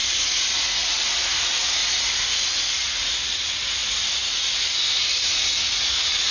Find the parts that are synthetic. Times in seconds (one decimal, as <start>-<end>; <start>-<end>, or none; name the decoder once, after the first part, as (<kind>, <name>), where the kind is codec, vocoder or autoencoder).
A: 0.0-1.8 (vocoder, Vocos); 2.4-6.3

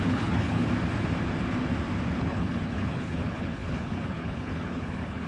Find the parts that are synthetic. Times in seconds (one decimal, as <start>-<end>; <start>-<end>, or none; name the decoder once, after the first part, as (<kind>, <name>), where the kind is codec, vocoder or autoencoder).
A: 0.0-0.6 (codec, HILCodec); 2.1-5.3

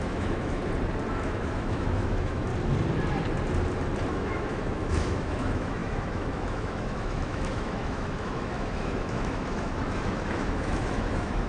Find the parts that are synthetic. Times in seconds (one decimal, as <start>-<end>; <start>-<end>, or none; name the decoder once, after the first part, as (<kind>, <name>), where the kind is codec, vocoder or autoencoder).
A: 0.0-0.6 (autoencoder, DAC-VAE); 1.1-2.5; 4.1-11.5

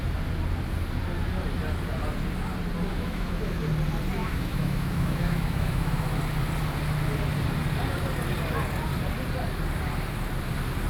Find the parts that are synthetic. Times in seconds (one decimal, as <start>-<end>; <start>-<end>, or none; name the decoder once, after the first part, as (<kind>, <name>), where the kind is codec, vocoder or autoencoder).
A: 2.9-3.6 (autoencoder, DAC-VAE); 4.2-6.2